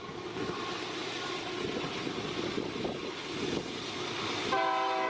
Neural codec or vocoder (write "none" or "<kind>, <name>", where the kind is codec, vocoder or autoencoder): none